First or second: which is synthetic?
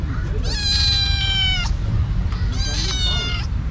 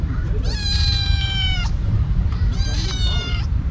second